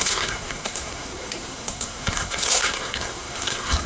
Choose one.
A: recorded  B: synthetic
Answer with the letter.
B